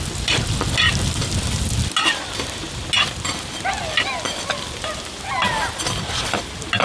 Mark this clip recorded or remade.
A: recorded